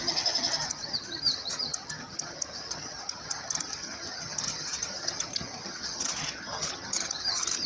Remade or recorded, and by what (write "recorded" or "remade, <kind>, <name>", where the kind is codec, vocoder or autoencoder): remade, vocoder, HiFi-GAN